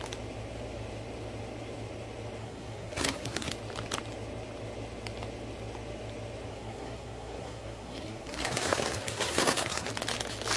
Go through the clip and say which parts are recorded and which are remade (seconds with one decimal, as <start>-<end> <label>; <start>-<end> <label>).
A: 0.0-2.4 recorded; 2.4-3.5 remade; 3.5-6.5 recorded; 6.5-9.9 remade; 9.9-10.6 recorded